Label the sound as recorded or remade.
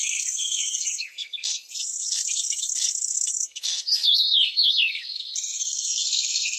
remade